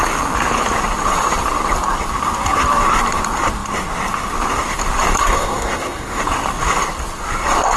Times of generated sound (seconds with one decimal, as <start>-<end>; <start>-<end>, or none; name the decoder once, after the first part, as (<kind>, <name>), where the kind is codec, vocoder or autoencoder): 5.2-6.2 (codec, SNAC)